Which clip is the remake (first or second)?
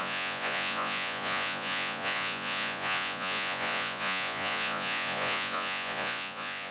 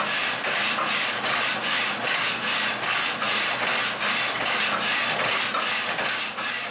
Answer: first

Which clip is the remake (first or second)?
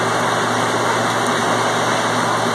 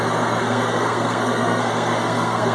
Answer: second